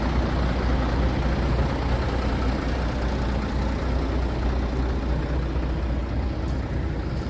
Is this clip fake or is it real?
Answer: real